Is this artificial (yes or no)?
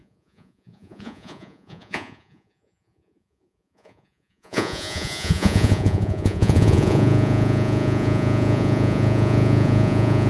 yes